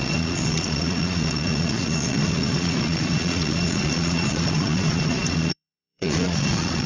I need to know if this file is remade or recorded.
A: remade